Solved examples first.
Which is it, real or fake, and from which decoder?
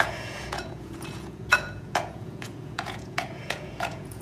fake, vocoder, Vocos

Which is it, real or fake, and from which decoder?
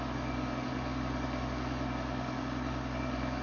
fake, codec, DAC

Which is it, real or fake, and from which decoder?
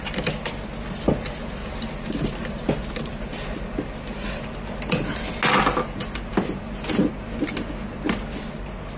real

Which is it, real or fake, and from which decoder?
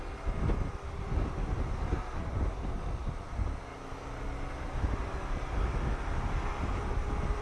real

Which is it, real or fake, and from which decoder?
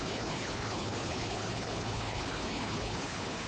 fake, codec, HILCodec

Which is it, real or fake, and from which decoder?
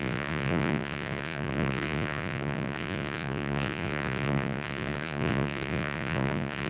fake, vocoder, Vocos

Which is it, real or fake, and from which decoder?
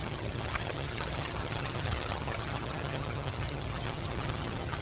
fake, vocoder, HiFi-GAN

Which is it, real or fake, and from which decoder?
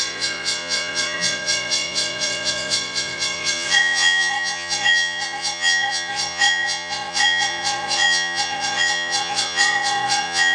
fake, vocoder, Vocos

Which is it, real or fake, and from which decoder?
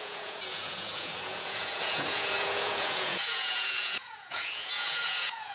fake, vocoder, Vocos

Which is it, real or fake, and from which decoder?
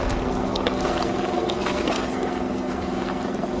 fake, codec, SNAC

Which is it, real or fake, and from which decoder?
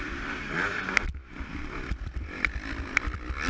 fake, vocoder, BigVGAN v2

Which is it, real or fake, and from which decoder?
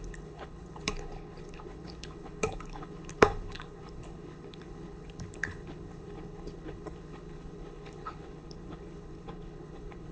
fake, codec, HILCodec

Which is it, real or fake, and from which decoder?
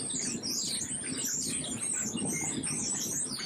fake, vocoder, BigVGAN v2